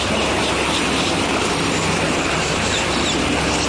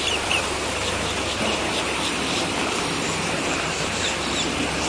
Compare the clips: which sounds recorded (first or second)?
first